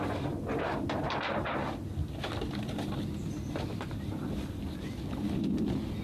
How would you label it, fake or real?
fake